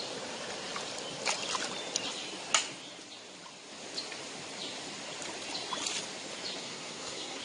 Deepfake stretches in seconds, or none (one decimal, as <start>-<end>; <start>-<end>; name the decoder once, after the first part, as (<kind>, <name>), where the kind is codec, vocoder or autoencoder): 6.6-7.4 (codec, SNAC)